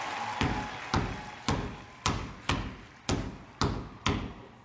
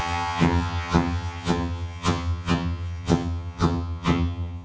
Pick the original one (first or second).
first